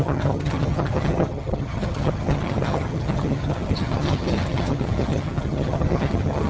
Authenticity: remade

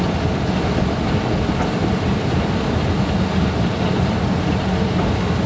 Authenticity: recorded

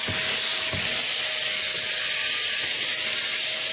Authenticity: recorded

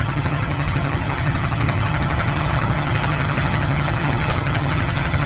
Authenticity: remade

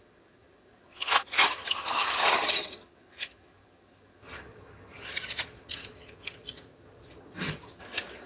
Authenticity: remade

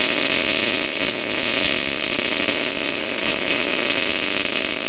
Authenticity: recorded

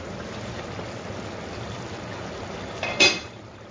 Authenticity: recorded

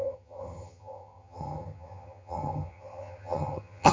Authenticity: remade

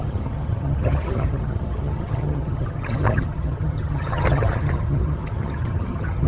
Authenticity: remade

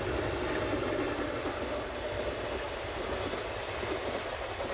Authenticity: recorded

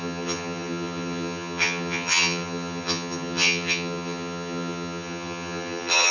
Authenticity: remade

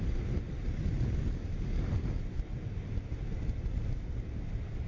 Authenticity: recorded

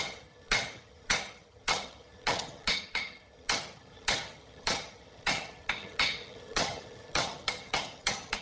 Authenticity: remade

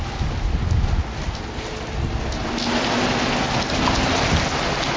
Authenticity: recorded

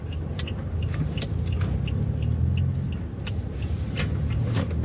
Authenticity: recorded